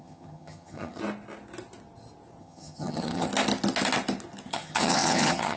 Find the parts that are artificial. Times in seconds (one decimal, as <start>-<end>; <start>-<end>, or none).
0.0-1.0; 2.4-3.3; 4.5-5.6